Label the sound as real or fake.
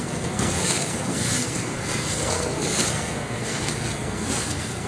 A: fake